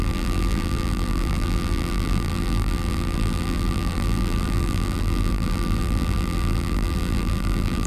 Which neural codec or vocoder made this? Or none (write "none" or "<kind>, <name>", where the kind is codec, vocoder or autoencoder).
vocoder, BigVGAN v2